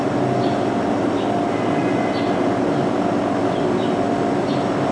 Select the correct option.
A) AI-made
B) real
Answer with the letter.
B